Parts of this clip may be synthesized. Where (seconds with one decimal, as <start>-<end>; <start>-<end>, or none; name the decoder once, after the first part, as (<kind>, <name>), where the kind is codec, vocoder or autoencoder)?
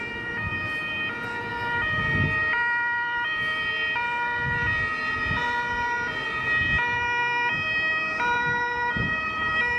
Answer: none